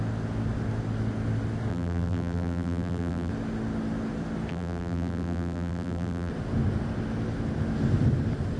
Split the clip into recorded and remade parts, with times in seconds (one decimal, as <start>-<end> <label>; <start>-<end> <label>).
0.0-1.7 recorded; 1.7-3.3 remade; 3.3-4.5 recorded; 4.5-6.3 remade; 6.3-8.6 recorded